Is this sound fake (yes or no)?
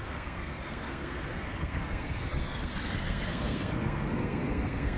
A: yes